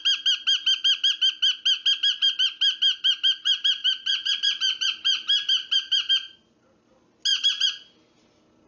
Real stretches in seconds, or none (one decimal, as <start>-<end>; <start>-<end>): 0.0-8.7